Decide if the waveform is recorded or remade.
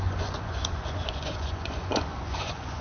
remade